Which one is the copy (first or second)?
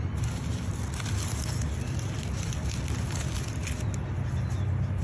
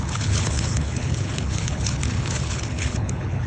second